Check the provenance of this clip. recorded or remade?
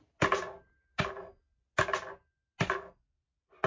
recorded